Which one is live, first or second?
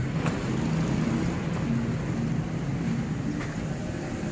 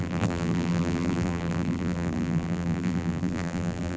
first